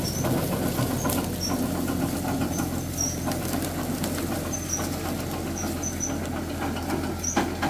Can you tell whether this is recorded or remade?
recorded